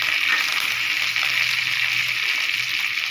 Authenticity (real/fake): real